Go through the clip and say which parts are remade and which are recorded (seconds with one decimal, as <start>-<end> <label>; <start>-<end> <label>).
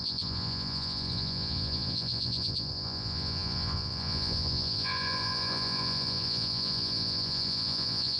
0.0-8.2 remade